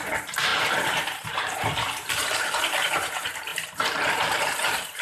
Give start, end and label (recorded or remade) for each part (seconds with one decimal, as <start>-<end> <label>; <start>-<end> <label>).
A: 0.0-5.0 remade